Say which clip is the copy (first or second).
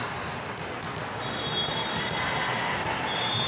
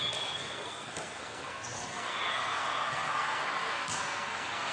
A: second